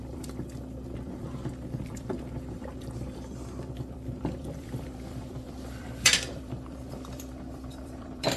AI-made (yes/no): yes